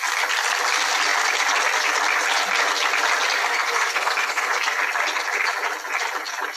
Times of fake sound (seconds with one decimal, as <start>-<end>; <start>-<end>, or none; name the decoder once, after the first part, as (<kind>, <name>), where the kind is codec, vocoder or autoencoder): 3.4-4.5 (codec, SNAC)